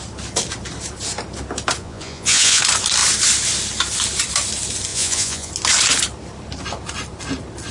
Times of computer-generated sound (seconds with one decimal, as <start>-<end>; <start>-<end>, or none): 1.8-2.6; 4.9-5.5